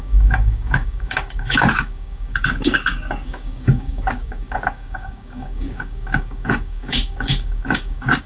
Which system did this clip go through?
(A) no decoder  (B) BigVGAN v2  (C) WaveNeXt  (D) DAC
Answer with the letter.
D